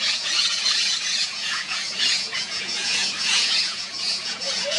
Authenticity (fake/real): fake